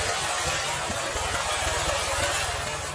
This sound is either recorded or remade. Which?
recorded